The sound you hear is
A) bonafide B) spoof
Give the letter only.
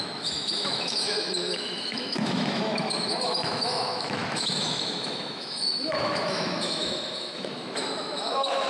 B